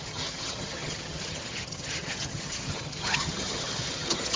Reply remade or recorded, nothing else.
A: remade